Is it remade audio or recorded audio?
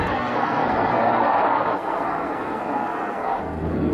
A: remade